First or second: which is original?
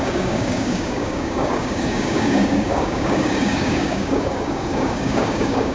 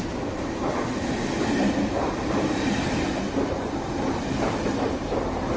second